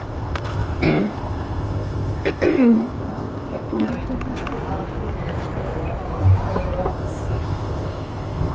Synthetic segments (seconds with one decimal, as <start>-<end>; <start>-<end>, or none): 0.0-3.9; 6.9-8.5